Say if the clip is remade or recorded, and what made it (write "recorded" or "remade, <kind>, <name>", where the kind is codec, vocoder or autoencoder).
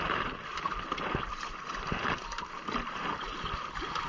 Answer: recorded